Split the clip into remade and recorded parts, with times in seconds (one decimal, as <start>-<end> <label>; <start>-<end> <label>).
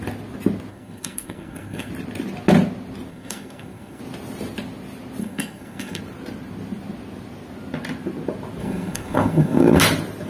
0.0-0.7 recorded; 0.7-1.9 remade; 1.9-3.1 recorded; 3.1-4.0 remade; 4.0-5.2 recorded; 5.2-6.0 remade; 6.0-8.6 recorded; 8.6-9.8 remade; 9.8-10.3 recorded